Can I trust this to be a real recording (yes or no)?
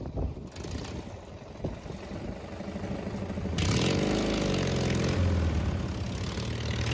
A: yes